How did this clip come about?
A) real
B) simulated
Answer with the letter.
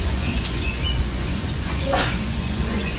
B